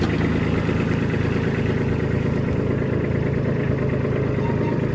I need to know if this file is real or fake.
real